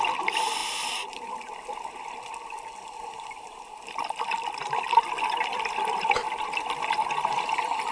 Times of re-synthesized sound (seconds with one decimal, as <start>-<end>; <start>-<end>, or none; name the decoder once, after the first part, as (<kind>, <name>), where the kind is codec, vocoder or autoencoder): none